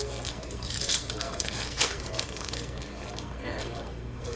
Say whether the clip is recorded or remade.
remade